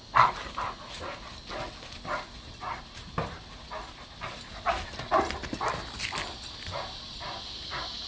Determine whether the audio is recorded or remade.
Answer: recorded